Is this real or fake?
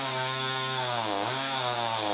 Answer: fake